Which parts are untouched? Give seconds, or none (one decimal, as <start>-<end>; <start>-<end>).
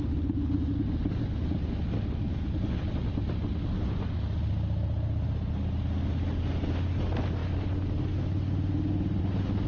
0.0-9.7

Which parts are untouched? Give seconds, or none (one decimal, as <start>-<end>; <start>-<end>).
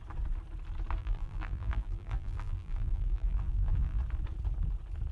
0.0-1.0; 4.0-5.1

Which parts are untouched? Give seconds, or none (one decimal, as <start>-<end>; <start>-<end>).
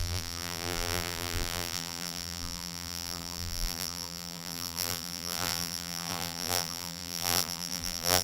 none